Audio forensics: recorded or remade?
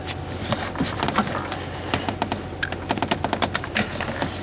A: recorded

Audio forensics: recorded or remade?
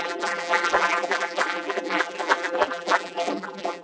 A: remade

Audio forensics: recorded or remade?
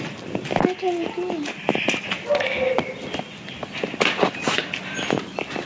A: recorded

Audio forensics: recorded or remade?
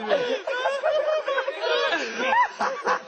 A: recorded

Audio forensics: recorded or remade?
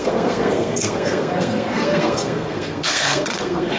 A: remade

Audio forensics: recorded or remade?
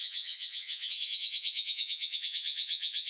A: remade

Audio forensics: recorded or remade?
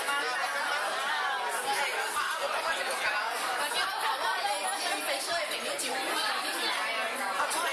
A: recorded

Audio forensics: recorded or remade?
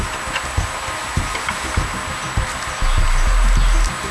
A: recorded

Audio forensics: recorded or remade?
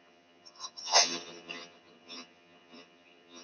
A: remade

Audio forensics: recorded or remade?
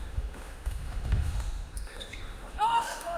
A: remade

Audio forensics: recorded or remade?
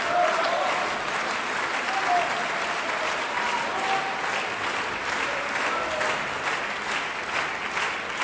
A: recorded